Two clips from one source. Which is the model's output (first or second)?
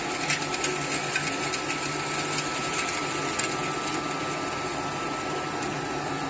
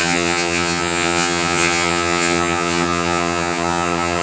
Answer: second